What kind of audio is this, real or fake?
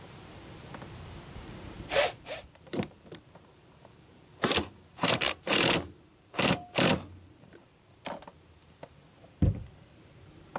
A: fake